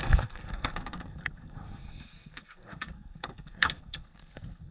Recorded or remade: remade